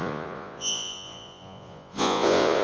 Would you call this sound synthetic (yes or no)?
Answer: yes